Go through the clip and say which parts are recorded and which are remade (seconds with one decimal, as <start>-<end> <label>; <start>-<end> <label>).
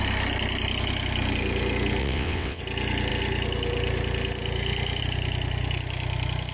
0.0-2.0 recorded; 2.0-2.6 remade; 2.6-6.5 recorded